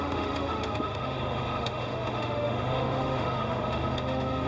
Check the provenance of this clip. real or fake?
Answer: fake